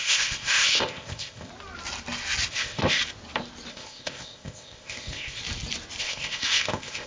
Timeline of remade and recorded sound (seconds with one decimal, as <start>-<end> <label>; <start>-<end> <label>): 0.0-1.5 remade; 1.5-2.5 recorded; 2.5-3.0 remade; 3.0-3.7 recorded; 3.7-5.4 remade; 5.4-6.0 recorded; 6.0-7.1 remade